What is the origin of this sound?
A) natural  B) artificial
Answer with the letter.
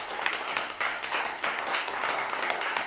B